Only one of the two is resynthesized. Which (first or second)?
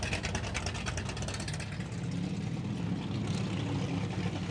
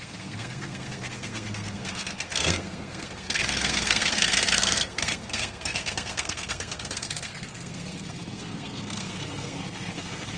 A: second